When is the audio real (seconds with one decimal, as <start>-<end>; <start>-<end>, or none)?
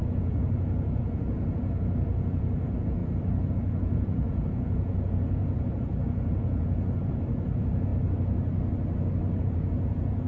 3.0-3.5; 7.9-9.4